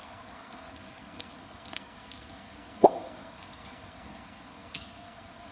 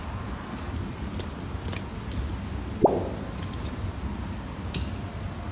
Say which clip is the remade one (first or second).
first